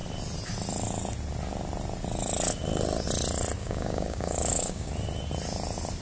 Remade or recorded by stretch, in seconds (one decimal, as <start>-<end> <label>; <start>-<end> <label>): 0.0-3.6 recorded; 3.6-4.9 remade; 4.9-6.0 recorded